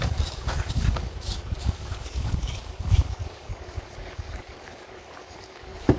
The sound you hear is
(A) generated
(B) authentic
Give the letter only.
A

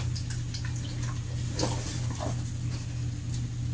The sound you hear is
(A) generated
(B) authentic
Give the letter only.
B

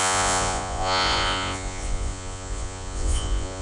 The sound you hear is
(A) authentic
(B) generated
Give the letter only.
B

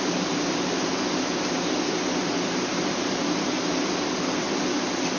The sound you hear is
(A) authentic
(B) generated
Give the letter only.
A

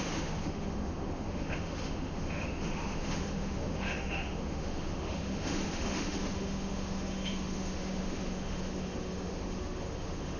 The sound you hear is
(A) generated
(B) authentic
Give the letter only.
A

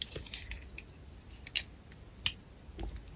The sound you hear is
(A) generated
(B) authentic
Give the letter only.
B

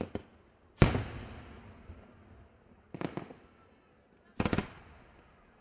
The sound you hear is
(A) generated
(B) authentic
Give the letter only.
B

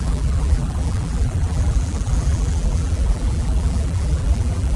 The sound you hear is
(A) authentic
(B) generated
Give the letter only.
B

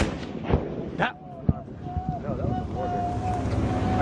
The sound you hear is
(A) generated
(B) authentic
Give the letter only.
B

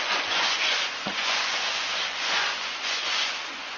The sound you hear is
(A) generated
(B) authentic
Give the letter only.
A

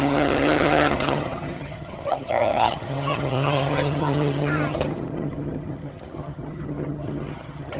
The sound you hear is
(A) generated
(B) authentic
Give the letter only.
A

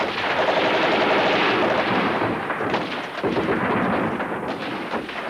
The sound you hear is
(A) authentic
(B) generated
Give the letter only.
A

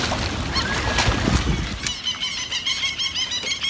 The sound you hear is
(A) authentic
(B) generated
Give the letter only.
A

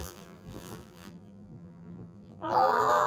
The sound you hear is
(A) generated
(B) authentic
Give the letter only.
A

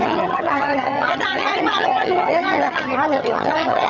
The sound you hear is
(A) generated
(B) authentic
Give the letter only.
A